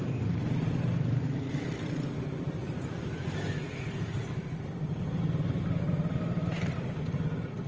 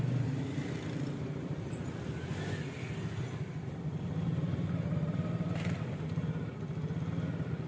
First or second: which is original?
second